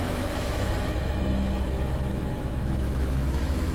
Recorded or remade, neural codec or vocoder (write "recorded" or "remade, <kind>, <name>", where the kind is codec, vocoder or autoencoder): remade, autoencoder, DAC-VAE